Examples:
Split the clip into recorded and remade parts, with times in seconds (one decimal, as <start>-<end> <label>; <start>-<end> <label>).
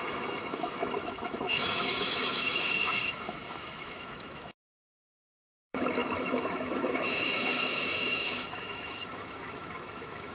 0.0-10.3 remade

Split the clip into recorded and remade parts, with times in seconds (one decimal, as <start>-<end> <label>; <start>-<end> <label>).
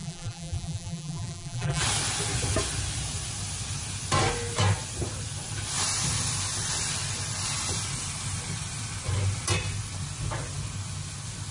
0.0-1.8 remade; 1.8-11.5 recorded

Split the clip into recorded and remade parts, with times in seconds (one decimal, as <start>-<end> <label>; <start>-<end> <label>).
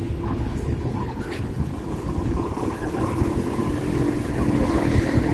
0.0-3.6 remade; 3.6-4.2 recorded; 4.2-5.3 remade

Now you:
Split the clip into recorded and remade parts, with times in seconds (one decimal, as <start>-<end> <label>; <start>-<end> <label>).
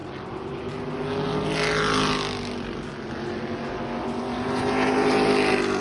0.0-5.8 recorded